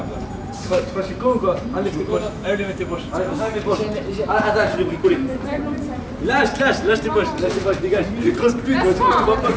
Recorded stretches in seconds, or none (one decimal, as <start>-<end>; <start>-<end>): 0.0-2.1; 3.5-9.6